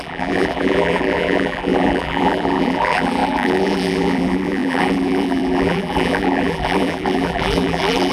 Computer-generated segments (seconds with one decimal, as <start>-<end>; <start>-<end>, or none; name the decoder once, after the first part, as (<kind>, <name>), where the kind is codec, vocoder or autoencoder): 0.0-8.1 (vocoder, BigVGAN v2)